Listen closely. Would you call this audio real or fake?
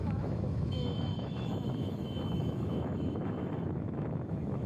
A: fake